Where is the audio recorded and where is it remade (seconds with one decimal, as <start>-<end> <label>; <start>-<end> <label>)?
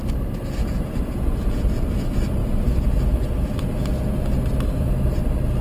0.0-5.6 recorded